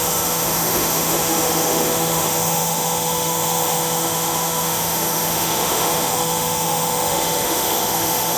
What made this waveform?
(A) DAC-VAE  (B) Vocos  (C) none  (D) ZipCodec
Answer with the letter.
A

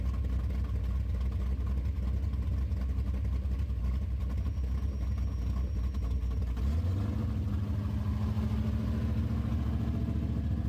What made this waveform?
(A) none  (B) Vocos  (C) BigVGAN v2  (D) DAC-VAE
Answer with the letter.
A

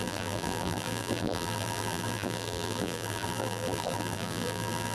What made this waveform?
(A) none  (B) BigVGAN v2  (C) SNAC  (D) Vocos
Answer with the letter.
B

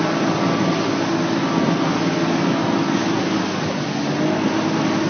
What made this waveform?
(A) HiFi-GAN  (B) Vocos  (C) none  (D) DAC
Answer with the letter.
C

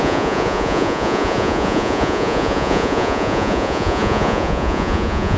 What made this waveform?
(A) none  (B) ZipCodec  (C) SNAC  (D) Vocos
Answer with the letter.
D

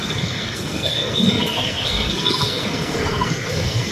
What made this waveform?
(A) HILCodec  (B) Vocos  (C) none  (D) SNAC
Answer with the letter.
D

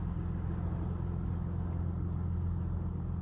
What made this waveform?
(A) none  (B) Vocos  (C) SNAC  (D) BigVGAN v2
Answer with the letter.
A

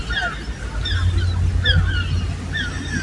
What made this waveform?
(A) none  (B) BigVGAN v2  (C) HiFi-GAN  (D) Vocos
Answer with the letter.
A